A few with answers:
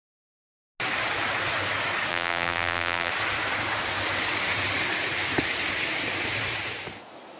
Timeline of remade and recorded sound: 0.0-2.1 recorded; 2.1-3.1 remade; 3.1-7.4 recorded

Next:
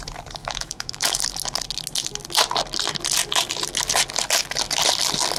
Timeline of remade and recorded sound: 0.0-0.4 recorded; 0.4-1.2 remade; 1.2-5.4 recorded

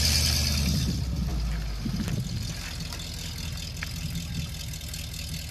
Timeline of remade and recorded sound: 0.0-5.5 recorded

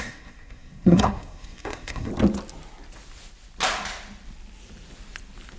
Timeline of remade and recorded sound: 0.0-2.1 remade; 2.1-5.6 recorded

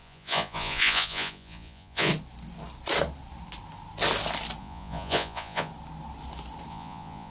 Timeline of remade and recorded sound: 0.0-2.1 remade; 2.1-4.6 recorded; 4.6-5.7 remade; 5.7-6.7 recorded; 6.7-7.3 remade

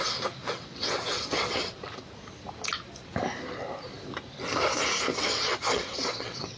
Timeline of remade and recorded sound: 0.0-0.4 recorded; 0.4-1.8 remade; 1.8-5.1 recorded; 5.1-6.6 remade